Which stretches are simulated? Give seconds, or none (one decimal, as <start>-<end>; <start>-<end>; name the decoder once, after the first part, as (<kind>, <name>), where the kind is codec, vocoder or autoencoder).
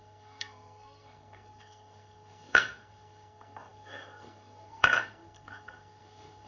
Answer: 0.0-6.5 (codec, SNAC)